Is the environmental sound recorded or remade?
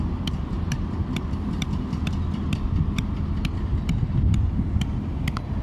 recorded